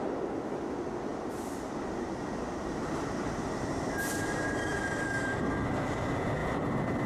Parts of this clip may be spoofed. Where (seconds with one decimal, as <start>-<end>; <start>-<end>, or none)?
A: 0.0-7.1